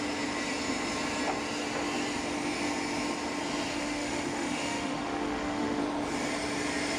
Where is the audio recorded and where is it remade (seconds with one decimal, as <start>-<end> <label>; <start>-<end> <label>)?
0.0-3.7 recorded; 3.7-5.8 remade; 5.8-7.0 recorded